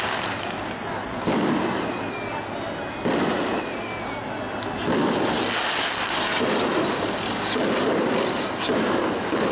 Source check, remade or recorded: recorded